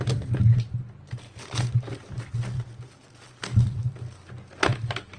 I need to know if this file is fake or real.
real